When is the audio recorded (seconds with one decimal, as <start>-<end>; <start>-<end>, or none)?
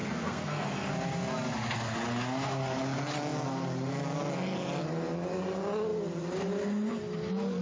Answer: 0.9-7.6